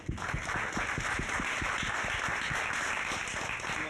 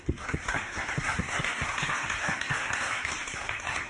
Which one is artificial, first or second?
second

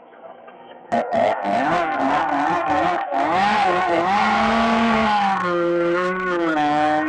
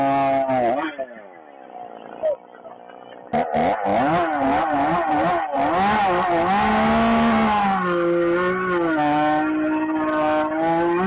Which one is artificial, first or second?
first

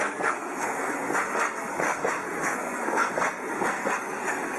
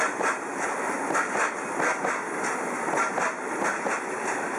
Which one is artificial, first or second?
first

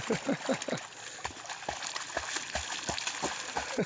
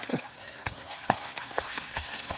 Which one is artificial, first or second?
second